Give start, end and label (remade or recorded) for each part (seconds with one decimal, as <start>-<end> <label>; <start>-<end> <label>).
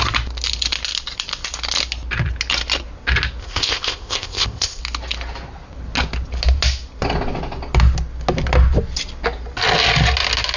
0.0-3.4 recorded; 3.4-4.8 remade; 4.8-10.6 recorded